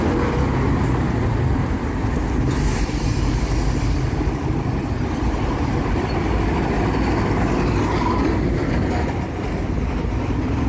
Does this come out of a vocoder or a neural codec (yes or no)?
no